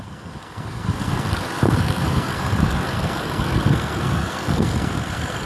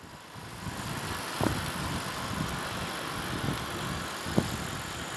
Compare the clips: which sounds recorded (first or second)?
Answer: second